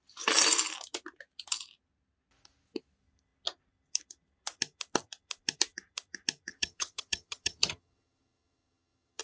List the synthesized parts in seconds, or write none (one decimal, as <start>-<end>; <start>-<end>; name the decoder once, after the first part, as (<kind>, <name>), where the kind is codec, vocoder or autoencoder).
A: 6.5-9.2 (vocoder, HiFi-GAN)